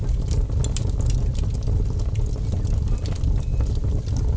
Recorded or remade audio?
recorded